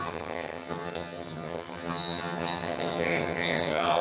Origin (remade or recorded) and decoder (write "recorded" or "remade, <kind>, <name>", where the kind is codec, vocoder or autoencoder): remade, vocoder, HiFi-GAN